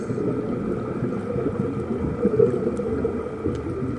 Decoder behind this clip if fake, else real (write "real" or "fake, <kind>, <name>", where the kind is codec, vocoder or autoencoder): real